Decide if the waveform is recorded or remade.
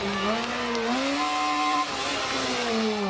recorded